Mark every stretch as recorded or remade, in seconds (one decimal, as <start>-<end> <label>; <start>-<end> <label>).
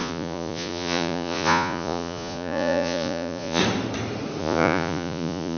0.0-3.6 remade; 3.6-4.4 recorded; 4.4-5.6 remade